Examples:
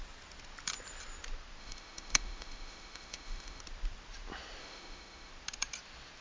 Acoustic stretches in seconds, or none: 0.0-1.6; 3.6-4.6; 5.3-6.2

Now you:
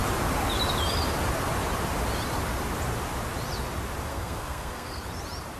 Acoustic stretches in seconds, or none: 0.0-4.1; 5.0-5.6

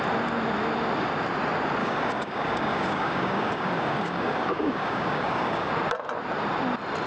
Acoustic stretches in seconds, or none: 0.0-1.8; 5.7-7.1

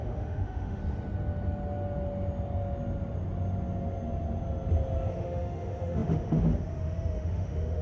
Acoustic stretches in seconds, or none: 0.8-5.1

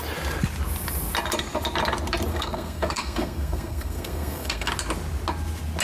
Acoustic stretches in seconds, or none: 0.0-2.3; 4.7-5.8

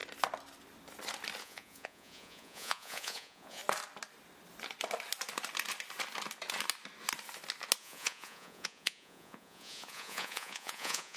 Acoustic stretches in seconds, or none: 0.0-1.4; 3.6-7.8

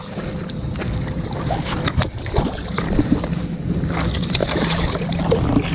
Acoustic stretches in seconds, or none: 3.4-4.4; 5.2-5.7